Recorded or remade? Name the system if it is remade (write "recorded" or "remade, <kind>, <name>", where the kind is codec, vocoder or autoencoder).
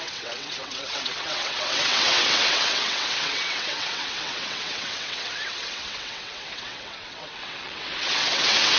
remade, vocoder, WaveNeXt